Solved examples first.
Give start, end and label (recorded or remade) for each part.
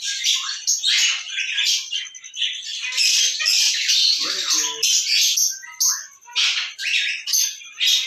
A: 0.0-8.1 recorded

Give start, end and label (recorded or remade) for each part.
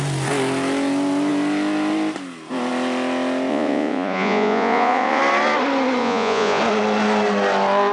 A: 0.0-3.5 recorded; 3.5-5.2 remade; 5.2-6.0 recorded; 6.0-6.6 remade; 6.6-7.9 recorded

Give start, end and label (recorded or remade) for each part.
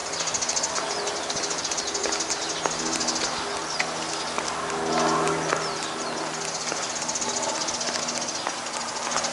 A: 0.0-9.3 recorded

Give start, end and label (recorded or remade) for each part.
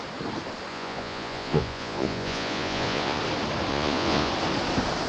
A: 0.0-0.7 recorded; 0.7-3.2 remade; 3.2-3.7 recorded; 3.7-4.3 remade; 4.3-5.1 recorded